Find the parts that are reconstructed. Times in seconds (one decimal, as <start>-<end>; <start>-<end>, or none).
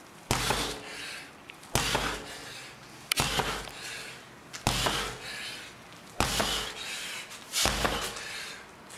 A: none